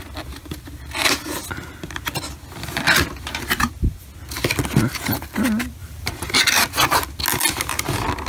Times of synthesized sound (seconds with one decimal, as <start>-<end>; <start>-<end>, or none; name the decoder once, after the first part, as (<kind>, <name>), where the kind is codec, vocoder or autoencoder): 5.8-6.4 (vocoder, BigVGAN v2)